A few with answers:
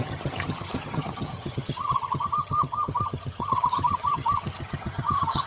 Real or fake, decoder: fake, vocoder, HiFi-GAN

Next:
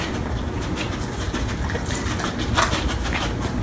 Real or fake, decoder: real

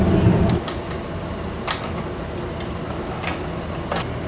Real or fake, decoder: real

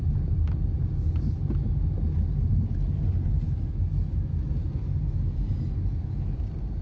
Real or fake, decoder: real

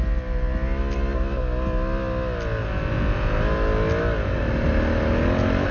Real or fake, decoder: real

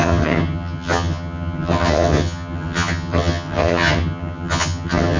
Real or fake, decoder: fake, vocoder, HiFi-GAN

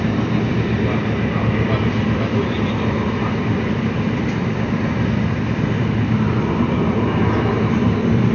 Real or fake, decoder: real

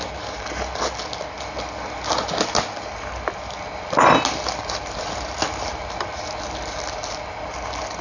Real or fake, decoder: real